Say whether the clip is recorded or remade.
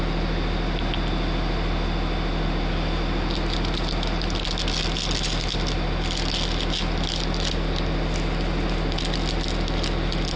recorded